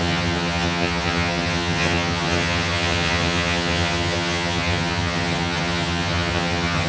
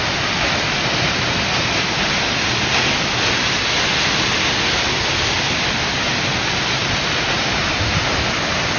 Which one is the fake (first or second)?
first